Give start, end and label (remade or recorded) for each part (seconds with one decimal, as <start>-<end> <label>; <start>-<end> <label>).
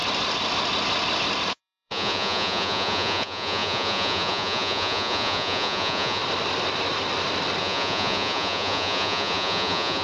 0.0-1.5 recorded; 1.5-6.2 remade; 6.2-7.6 recorded; 7.6-10.0 remade